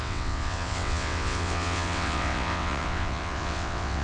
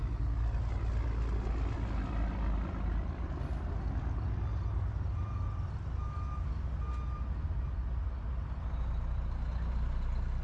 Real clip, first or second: second